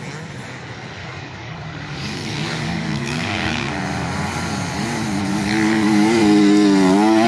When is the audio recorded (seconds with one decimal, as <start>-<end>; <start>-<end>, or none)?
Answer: 0.0-1.0; 3.7-5.3; 6.2-7.3